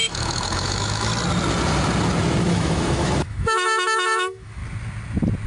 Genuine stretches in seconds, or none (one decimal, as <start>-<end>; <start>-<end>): 1.1-2.4; 4.6-5.5